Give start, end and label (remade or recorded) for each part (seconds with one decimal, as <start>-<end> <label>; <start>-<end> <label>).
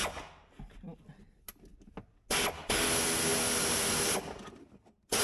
0.0-5.2 recorded